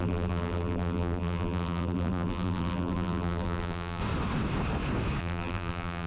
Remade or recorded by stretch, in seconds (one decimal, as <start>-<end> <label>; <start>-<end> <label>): 0.0-4.0 remade; 4.0-5.2 recorded; 5.2-6.1 remade

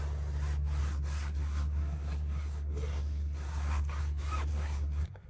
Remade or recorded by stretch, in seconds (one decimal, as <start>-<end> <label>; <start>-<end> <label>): 0.0-0.8 recorded; 0.8-4.0 remade; 4.0-4.5 recorded; 4.5-5.3 remade